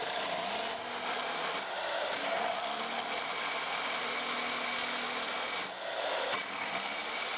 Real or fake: real